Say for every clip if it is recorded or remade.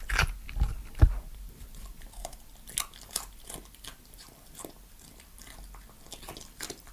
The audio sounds recorded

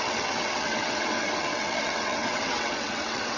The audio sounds remade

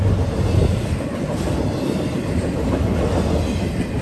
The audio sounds recorded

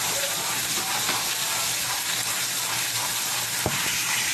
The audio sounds remade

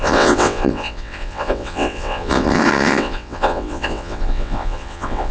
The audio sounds remade